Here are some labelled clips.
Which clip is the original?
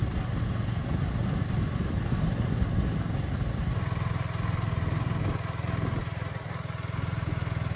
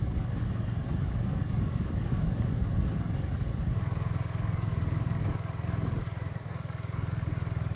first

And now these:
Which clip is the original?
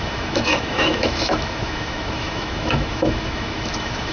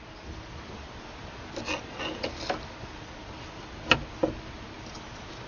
second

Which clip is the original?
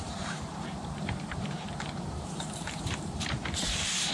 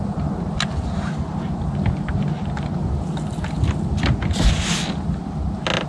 second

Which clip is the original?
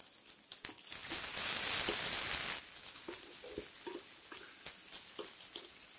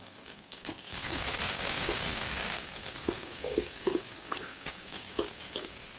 first